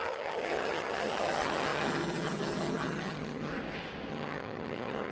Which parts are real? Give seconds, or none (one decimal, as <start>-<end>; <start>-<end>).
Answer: 3.5-4.1